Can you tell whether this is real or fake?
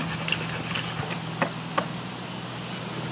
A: real